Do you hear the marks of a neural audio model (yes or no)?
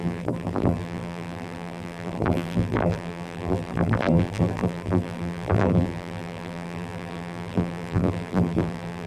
yes